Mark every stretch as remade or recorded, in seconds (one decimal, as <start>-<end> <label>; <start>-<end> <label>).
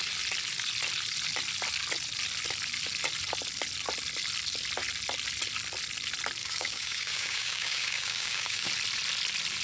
0.0-6.4 recorded; 6.4-8.7 remade; 8.7-9.6 recorded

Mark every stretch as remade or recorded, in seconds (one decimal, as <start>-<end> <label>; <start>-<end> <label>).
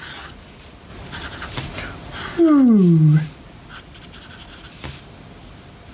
0.0-5.9 recorded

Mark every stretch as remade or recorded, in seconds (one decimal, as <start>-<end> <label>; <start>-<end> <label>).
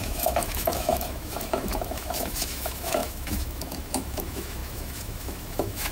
0.0-5.9 remade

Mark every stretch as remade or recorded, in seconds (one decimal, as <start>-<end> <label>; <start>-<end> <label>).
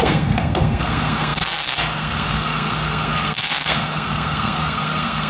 0.0-5.3 remade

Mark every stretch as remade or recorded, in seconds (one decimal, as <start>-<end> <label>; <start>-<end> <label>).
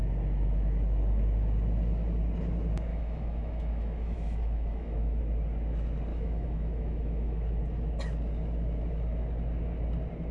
0.0-2.9 recorded; 2.9-5.2 remade; 5.2-6.1 recorded; 6.1-7.6 remade; 7.6-10.3 recorded